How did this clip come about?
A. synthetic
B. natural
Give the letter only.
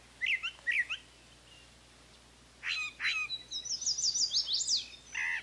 B